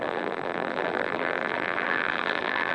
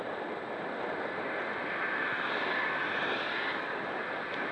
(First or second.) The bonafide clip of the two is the second